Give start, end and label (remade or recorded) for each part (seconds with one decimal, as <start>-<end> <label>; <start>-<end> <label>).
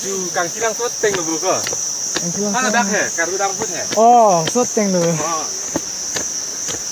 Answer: 0.0-6.9 recorded